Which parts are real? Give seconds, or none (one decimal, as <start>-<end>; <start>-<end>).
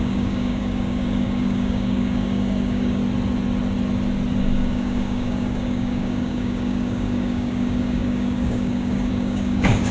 3.0-4.4